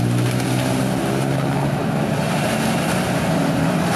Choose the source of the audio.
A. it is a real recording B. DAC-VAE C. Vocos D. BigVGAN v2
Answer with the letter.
A